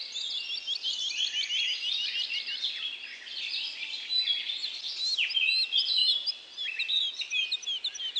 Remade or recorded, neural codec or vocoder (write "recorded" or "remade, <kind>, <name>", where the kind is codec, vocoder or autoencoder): recorded